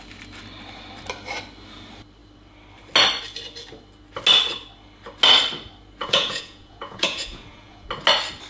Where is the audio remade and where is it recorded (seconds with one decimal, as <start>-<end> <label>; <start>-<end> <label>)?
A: 0.0-6.0 recorded; 6.0-7.9 remade; 7.9-8.5 recorded